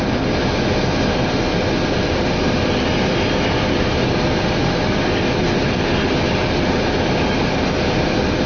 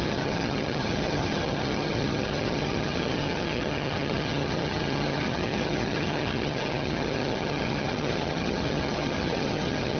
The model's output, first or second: second